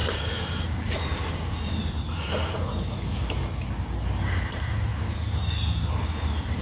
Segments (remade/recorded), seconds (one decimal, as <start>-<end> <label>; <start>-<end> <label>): 0.0-6.6 recorded